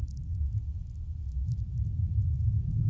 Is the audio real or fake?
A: real